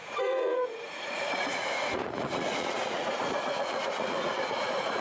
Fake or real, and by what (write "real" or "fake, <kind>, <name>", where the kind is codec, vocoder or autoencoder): fake, vocoder, Vocos